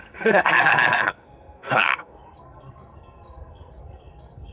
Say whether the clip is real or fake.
fake